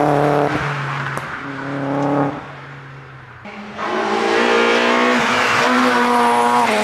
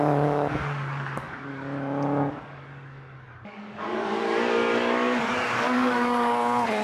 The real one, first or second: first